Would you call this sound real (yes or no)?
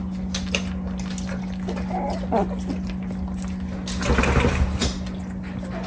yes